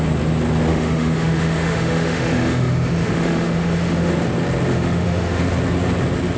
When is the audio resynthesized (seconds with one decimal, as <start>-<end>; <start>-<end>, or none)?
0.7-4.1; 4.7-5.4